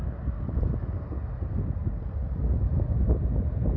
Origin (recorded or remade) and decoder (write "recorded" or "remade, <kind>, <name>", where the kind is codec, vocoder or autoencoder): recorded